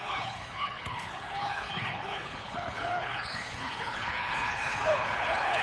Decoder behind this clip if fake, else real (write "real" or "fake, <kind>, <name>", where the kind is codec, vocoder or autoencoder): fake, codec, HILCodec